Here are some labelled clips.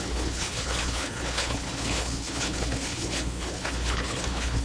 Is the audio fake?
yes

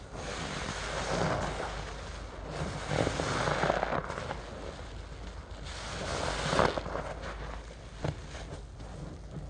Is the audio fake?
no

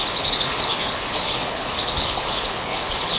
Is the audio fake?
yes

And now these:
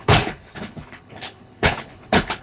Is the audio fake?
yes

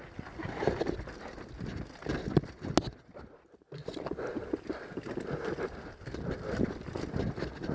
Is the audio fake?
no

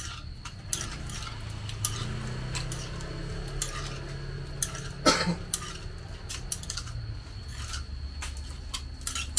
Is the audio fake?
no